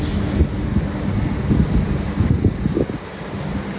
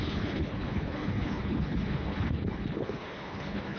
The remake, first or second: second